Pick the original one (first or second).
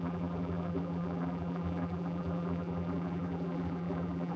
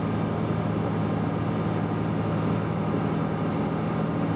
second